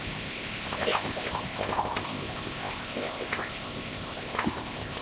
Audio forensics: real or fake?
fake